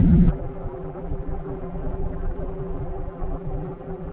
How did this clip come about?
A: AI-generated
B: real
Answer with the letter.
A